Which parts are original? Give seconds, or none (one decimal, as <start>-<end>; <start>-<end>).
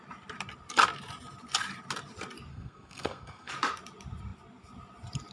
0.0-2.5; 3.5-5.3